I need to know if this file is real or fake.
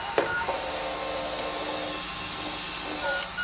real